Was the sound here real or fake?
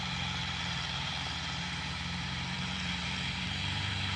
fake